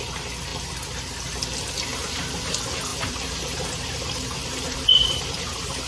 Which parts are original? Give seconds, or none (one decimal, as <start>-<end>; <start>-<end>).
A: 0.0-1.9; 2.5-2.9